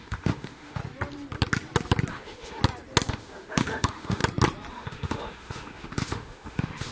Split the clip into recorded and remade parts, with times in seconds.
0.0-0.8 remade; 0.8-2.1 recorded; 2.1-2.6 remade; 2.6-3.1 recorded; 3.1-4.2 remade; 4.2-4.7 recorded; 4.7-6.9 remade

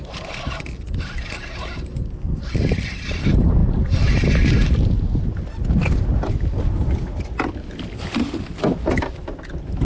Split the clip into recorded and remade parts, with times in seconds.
0.0-9.8 recorded